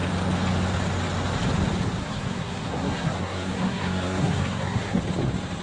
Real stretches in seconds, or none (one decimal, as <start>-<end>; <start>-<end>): 0.0-2.0; 5.0-5.6